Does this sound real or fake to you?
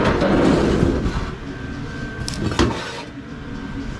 real